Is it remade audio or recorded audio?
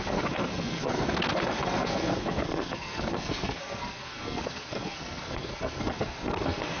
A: remade